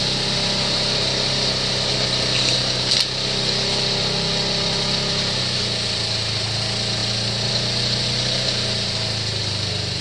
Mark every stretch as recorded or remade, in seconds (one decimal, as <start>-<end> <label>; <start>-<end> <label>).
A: 0.0-10.0 recorded